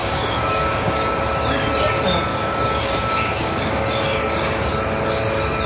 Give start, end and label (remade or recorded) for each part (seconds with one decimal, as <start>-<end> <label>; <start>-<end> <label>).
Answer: 0.0-1.2 remade; 1.2-2.3 recorded; 2.3-4.8 remade; 4.8-5.7 recorded